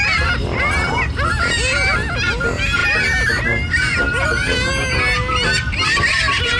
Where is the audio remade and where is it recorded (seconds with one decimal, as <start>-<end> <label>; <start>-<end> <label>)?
0.0-6.6 recorded

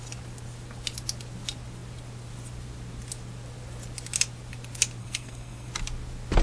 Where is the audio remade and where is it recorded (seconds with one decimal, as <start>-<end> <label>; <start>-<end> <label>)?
0.0-5.0 recorded; 5.0-5.7 remade; 5.7-6.4 recorded

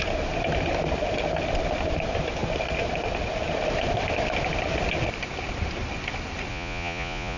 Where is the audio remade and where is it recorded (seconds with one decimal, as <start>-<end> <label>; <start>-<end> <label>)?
0.0-6.5 recorded; 6.5-7.4 remade

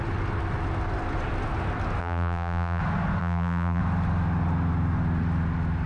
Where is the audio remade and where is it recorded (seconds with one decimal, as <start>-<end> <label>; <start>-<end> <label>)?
0.0-2.0 recorded; 2.0-2.8 remade; 2.8-3.2 recorded; 3.2-3.8 remade; 3.8-5.9 recorded

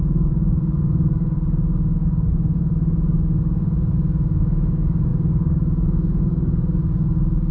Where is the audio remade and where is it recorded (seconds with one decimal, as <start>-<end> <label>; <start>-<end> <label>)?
0.0-7.5 remade

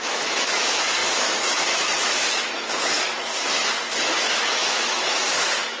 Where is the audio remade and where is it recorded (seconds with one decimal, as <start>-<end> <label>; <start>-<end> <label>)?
0.0-5.8 remade

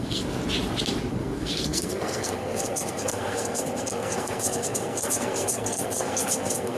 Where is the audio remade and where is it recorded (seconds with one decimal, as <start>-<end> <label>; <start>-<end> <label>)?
0.0-0.4 remade; 0.4-1.1 recorded; 1.1-6.8 remade

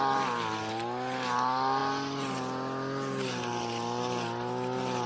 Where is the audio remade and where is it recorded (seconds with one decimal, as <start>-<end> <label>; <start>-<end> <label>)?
0.0-5.1 recorded